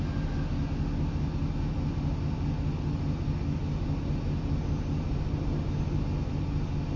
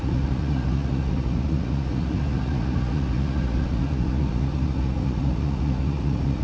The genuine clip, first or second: first